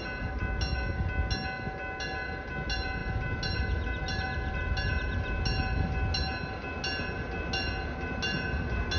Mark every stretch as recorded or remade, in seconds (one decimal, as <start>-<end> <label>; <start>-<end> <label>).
0.0-9.0 recorded

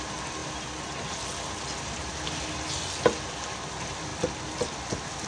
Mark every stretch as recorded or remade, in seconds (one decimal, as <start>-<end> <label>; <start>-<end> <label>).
0.0-5.3 recorded

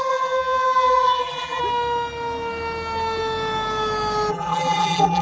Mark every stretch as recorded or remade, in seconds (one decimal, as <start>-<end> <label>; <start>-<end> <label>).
0.0-1.6 remade; 1.6-4.3 recorded; 4.3-5.2 remade